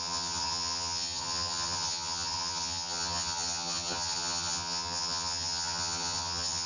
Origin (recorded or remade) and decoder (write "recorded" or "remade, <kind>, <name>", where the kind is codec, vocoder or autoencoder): remade, vocoder, HiFi-GAN